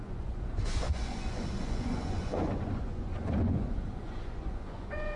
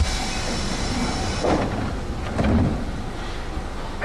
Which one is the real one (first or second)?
second